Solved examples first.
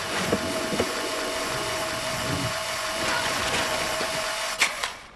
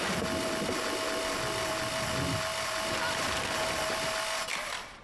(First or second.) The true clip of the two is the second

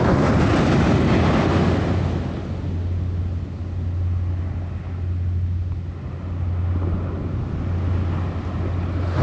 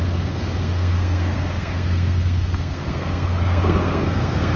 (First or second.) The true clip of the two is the first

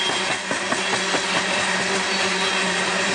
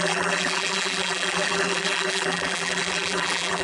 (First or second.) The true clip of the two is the first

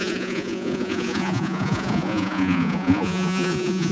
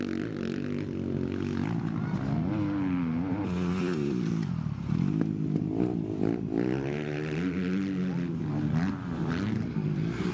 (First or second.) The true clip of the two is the second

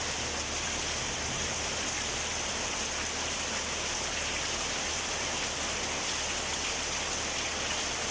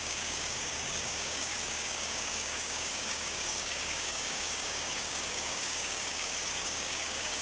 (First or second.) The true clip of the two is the first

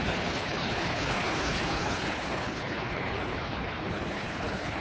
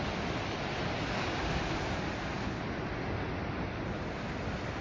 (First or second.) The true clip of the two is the second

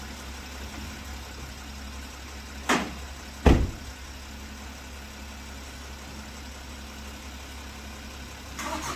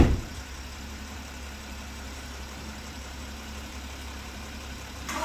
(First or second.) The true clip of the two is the first